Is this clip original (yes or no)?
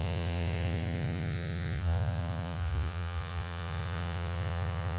no